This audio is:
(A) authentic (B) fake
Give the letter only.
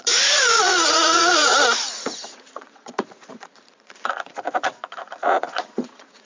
B